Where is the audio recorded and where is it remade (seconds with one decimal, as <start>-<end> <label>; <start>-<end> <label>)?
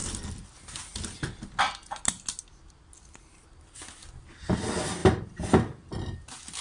0.0-6.6 recorded